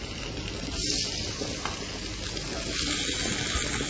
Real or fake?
real